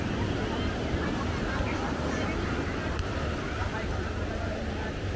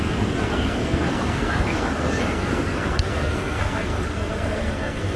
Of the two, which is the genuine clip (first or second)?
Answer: first